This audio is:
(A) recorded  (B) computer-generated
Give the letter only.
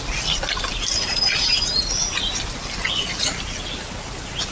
A